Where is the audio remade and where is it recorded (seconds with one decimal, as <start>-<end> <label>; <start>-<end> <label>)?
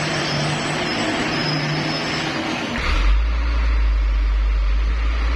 0.0-5.4 recorded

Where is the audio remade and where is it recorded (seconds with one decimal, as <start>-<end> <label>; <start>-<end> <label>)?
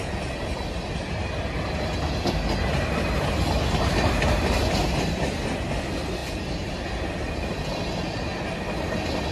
0.0-6.2 recorded; 6.2-6.7 remade; 6.7-9.3 recorded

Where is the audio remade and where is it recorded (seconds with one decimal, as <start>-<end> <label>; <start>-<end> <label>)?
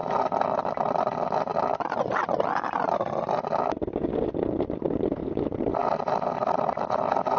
0.0-5.8 recorded; 5.8-7.4 remade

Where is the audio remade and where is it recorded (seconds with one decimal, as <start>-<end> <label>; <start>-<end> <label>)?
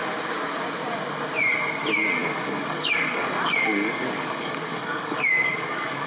0.0-2.2 recorded; 2.2-6.1 remade